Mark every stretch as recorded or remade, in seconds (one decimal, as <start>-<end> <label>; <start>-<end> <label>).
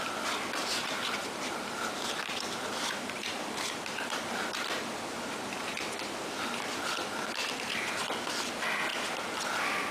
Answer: 0.0-0.6 recorded; 0.6-4.5 remade; 4.5-9.9 recorded